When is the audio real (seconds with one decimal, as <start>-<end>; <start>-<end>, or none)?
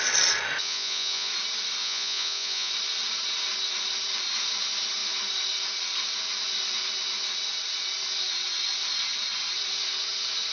0.0-0.6; 1.3-1.8; 2.7-10.5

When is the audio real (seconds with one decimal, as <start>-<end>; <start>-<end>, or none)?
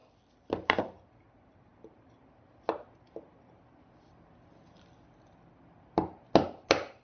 0.0-7.0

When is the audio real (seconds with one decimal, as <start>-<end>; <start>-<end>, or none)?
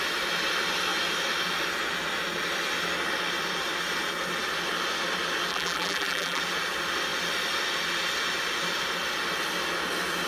0.0-5.5; 6.4-10.3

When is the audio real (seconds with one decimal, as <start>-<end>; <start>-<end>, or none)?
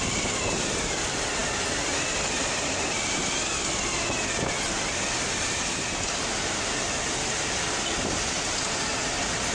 0.0-9.5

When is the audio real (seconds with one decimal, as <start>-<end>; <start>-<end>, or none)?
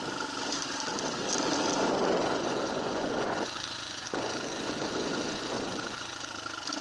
0.0-2.2; 6.3-6.8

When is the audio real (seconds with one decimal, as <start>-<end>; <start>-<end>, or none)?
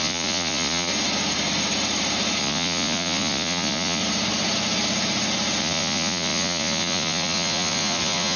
0.9-2.4; 4.0-5.6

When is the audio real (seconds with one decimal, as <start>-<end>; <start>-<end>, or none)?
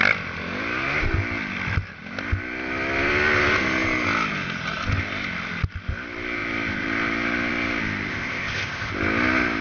0.0-8.1; 8.9-9.6